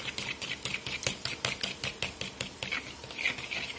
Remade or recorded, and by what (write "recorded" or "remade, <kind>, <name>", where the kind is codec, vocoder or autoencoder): recorded